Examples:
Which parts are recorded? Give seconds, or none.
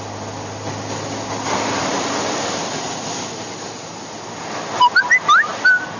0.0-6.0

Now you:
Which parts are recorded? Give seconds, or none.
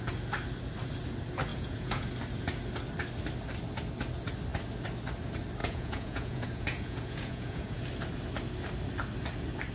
0.0-1.5; 2.1-5.6; 7.8-9.7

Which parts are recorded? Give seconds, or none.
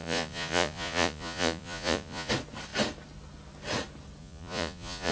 2.3-4.2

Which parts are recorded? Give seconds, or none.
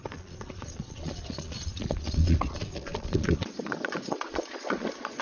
none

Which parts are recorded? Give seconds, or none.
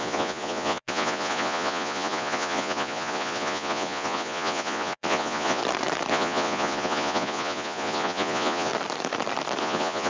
5.6-6.1; 8.7-9.6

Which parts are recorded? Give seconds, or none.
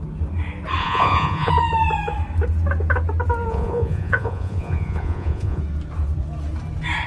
0.0-0.8; 1.5-3.5; 5.6-7.1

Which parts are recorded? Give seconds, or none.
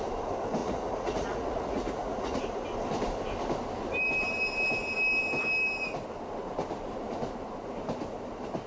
0.0-0.6; 2.4-8.7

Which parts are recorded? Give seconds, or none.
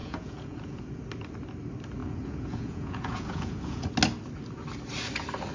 1.0-2.0; 3.9-5.5